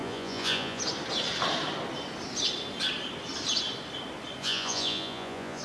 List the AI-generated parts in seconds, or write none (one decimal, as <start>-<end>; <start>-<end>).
0.0-0.8; 4.4-5.6